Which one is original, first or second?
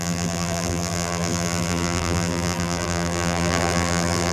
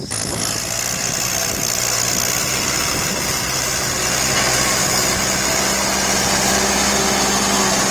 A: second